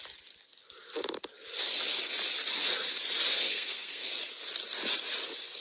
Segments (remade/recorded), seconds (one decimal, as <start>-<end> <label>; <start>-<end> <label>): 0.0-3.3 recorded; 3.3-4.1 remade; 4.1-5.6 recorded